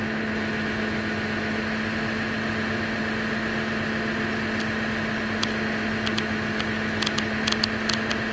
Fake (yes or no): no